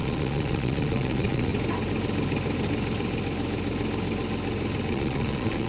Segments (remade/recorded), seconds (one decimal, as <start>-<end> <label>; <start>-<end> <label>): 0.0-1.5 remade; 1.5-4.9 recorded; 4.9-5.7 remade